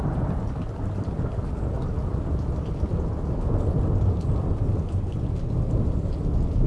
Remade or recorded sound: recorded